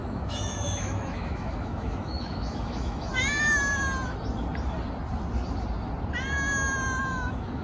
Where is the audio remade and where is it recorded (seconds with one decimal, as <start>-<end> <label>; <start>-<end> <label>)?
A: 0.0-3.1 remade; 3.1-7.0 recorded; 7.0-7.6 remade